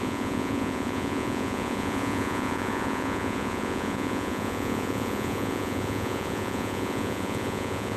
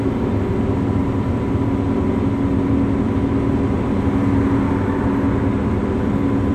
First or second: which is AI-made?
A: first